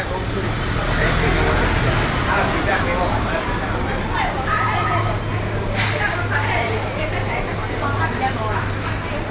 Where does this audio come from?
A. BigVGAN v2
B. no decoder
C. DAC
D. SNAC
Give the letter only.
B